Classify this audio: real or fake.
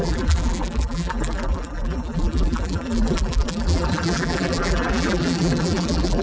fake